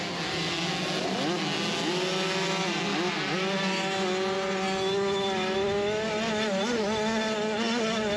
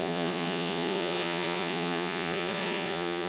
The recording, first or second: first